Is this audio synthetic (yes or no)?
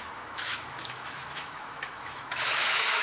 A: yes